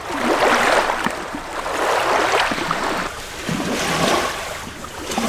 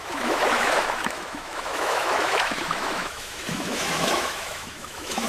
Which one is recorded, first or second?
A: first